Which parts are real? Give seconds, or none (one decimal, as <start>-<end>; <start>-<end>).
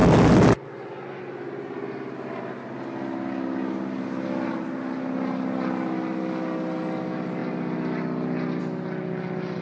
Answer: 0.0-9.6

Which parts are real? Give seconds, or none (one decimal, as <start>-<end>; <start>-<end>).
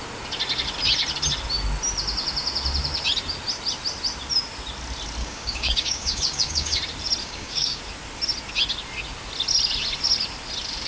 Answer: 0.0-5.2; 6.8-7.2; 7.8-10.9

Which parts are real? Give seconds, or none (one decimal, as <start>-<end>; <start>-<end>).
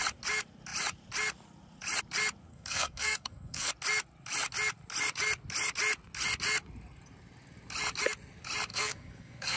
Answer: 0.0-2.5; 3.7-8.7